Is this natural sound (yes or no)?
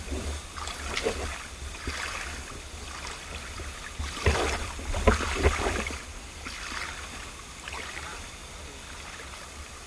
yes